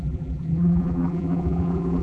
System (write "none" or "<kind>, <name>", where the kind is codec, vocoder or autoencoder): vocoder, BigVGAN v2